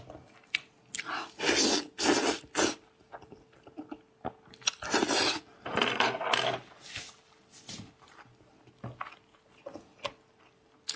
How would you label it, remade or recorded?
recorded